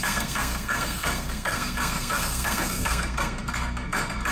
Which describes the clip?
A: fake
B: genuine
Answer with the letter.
A